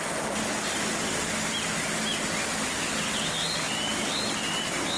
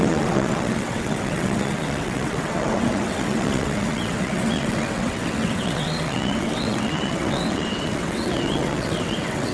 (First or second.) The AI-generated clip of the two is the second